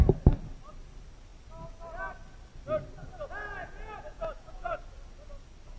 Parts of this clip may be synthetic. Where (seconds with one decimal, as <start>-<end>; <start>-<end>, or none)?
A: 3.6-4.8